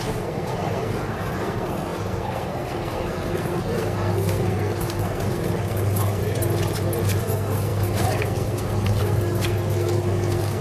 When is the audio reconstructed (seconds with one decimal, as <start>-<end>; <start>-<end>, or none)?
0.0-6.2; 7.2-10.6